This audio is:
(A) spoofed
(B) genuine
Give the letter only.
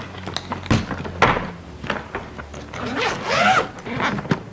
B